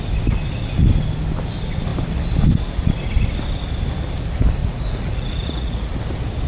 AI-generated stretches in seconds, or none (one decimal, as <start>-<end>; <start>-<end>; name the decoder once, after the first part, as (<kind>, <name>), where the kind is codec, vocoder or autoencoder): 4.6-5.9 (vocoder, Vocos)